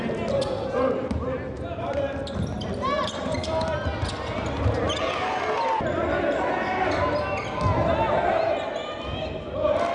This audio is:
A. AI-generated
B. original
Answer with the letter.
B